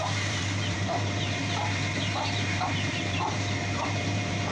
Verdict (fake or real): fake